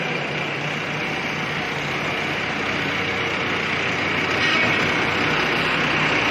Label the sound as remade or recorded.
recorded